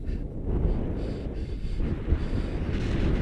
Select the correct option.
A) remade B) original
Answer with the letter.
B